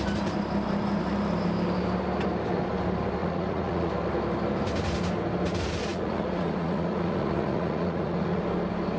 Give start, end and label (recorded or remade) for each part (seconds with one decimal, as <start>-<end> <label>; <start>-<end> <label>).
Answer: 0.0-3.2 recorded; 3.2-3.9 remade; 3.9-5.9 recorded; 5.9-8.4 remade; 8.4-9.0 recorded